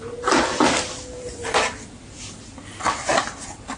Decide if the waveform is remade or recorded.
recorded